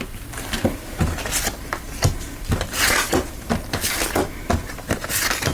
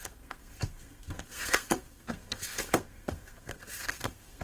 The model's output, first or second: second